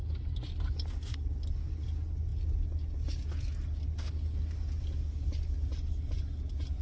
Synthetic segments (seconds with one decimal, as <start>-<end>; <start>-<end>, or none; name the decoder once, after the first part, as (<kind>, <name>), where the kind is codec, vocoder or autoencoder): none